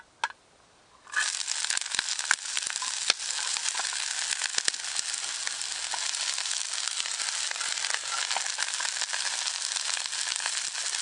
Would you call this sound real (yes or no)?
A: yes